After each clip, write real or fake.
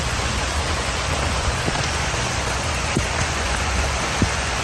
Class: fake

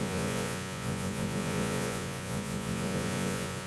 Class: fake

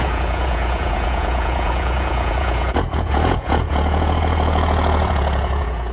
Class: fake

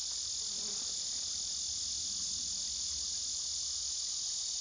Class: real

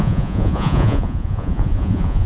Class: fake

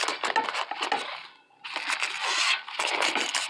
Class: real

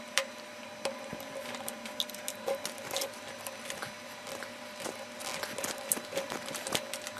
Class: real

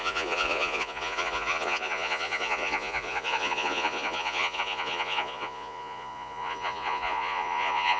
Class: fake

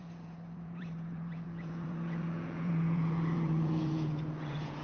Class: fake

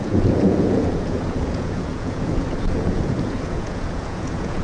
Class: fake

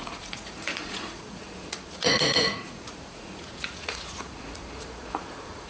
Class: fake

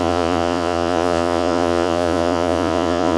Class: fake